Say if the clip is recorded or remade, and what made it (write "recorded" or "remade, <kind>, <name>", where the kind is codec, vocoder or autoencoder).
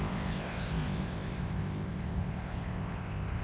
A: remade, codec, ZipCodec